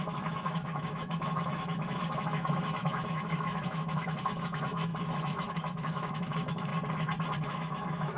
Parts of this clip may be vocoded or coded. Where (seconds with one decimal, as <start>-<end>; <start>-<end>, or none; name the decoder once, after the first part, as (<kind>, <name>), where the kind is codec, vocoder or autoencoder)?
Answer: 0.0-6.7 (autoencoder, DAC-VAE); 7.4-8.2